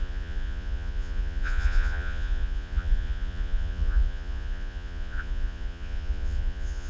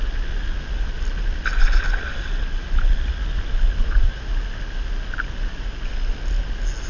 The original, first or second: second